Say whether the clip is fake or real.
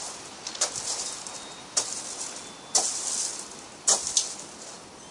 real